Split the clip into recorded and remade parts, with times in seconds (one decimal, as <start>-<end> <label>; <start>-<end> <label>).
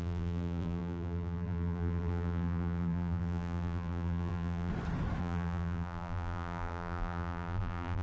0.0-4.7 remade; 4.7-5.2 recorded; 5.2-8.0 remade